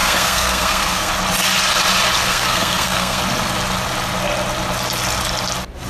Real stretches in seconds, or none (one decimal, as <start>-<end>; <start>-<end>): 1.1-2.2; 3.2-5.9